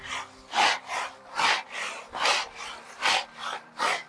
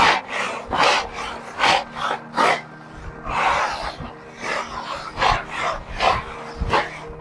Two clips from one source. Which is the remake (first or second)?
first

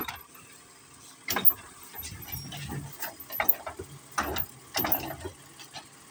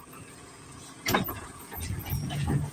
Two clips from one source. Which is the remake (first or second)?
second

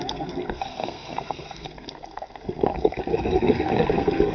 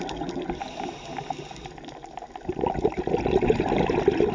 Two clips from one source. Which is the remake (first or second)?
first